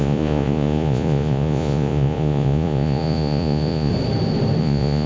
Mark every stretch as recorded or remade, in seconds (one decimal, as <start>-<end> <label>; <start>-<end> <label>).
0.0-3.9 remade; 3.9-4.6 recorded; 4.6-5.1 remade